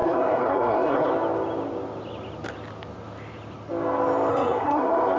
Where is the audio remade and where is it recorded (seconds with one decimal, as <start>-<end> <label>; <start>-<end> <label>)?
0.0-1.1 remade; 1.1-4.3 recorded; 4.3-5.2 remade